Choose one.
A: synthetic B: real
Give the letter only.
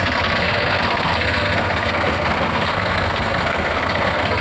A